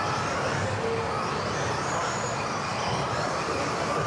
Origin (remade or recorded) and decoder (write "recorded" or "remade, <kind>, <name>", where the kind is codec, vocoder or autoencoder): recorded